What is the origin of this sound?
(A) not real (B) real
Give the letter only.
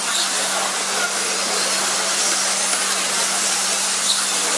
B